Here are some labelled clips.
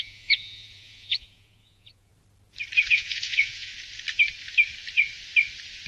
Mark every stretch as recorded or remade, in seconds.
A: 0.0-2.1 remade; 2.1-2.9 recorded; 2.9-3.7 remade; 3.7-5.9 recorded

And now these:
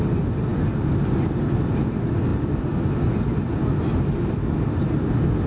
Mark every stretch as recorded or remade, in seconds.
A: 0.0-5.5 recorded

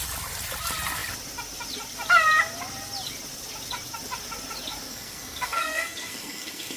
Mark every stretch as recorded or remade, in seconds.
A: 0.0-4.9 recorded; 4.9-6.8 remade